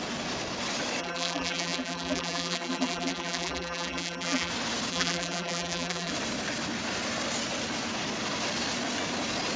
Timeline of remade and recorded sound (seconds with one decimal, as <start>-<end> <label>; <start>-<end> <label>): 0.0-1.0 recorded; 1.0-4.5 remade; 4.5-4.9 recorded; 4.9-6.1 remade; 6.1-9.6 recorded